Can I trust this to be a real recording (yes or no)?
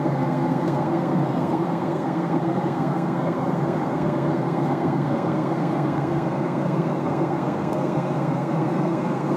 no